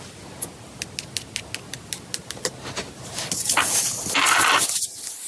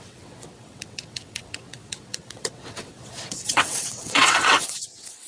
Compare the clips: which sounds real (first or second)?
first